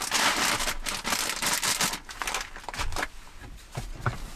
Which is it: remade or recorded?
recorded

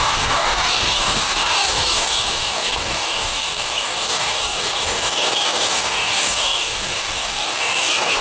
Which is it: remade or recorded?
remade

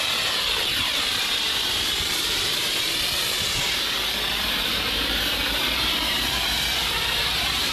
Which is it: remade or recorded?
remade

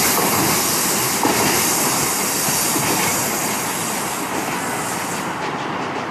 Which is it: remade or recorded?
recorded